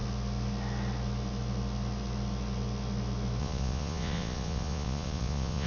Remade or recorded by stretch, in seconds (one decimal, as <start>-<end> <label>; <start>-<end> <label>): 0.0-3.4 recorded; 3.4-5.7 remade